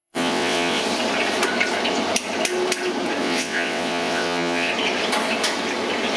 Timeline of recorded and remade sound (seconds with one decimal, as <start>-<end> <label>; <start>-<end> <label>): 0.0-0.8 remade; 0.8-3.2 recorded; 3.2-4.7 remade; 4.7-6.2 recorded